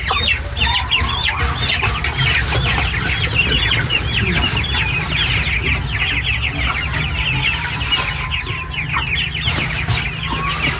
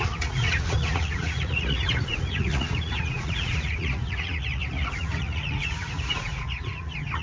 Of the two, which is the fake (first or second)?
second